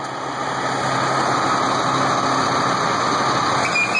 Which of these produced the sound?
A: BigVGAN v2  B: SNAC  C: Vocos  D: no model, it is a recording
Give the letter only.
D